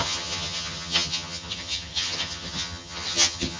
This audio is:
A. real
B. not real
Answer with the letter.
B